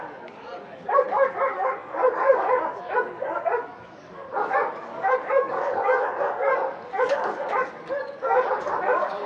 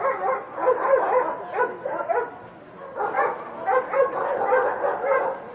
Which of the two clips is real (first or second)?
second